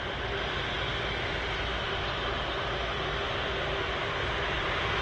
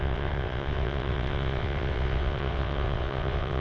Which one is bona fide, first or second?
first